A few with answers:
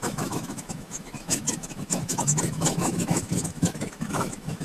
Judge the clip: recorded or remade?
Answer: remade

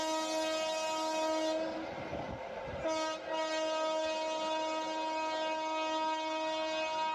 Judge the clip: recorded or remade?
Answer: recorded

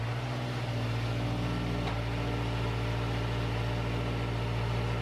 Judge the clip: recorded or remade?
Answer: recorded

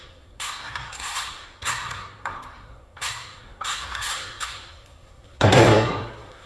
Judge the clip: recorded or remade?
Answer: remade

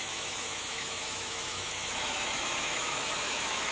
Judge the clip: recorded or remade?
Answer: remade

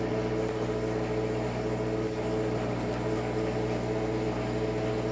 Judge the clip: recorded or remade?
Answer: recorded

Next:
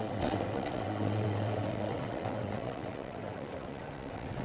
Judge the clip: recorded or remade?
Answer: remade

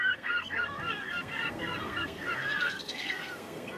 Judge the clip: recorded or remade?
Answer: remade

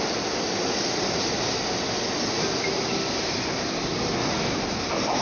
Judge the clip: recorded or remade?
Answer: recorded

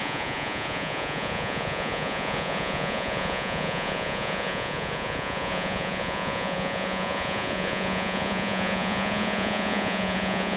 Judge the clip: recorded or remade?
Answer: remade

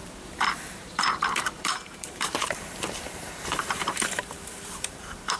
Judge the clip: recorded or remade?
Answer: remade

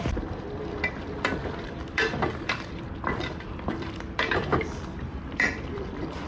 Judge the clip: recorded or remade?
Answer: remade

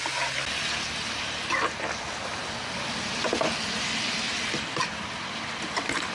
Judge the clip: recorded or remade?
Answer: recorded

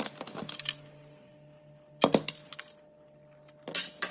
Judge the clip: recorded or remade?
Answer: recorded